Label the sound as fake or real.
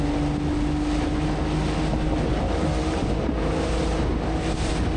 real